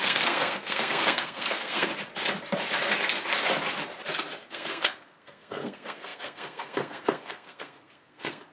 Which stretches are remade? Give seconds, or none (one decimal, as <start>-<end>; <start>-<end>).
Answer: 0.0-1.9; 4.5-8.5